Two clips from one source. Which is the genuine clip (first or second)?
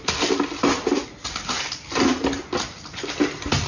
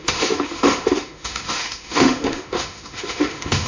first